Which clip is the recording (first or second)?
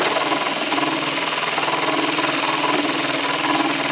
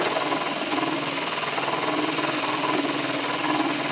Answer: first